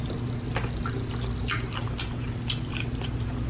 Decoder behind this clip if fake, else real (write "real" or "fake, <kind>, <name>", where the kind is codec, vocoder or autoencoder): real